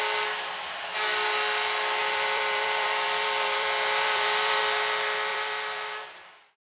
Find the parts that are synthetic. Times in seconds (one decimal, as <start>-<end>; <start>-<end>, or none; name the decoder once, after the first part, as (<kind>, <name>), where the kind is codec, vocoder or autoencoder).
2.0-4.6 (vocoder, BigVGAN v2); 5.3-6.3